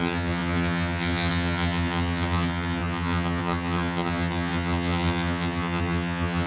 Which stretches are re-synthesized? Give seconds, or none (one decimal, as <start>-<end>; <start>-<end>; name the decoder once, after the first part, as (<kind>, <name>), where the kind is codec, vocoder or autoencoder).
0.0-6.5 (vocoder, HiFi-GAN)